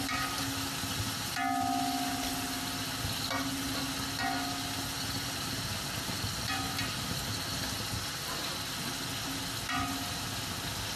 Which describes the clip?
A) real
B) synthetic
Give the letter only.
A